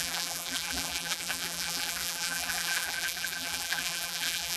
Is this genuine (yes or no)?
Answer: no